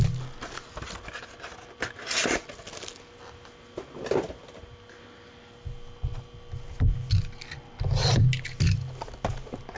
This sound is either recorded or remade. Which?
recorded